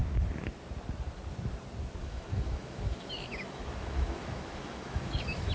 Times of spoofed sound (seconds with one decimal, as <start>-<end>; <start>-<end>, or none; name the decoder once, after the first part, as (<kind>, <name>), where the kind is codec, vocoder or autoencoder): 2.0-5.5 (autoencoder, DAC-VAE)